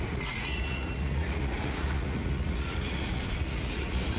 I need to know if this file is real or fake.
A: fake